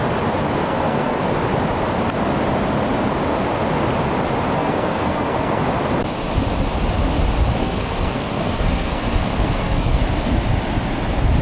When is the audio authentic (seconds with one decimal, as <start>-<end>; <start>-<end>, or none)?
0.0-0.6; 1.2-4.6; 5.6-7.6; 10.0-11.4